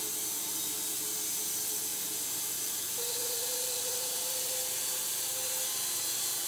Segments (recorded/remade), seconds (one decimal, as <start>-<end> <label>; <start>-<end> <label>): 0.0-1.9 recorded; 1.9-4.5 remade; 4.5-6.5 recorded